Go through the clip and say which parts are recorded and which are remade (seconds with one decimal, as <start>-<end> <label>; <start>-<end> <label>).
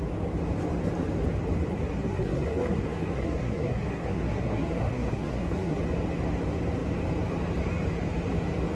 0.0-1.7 recorded; 1.7-5.8 remade; 5.8-8.7 recorded